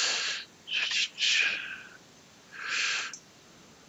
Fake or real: real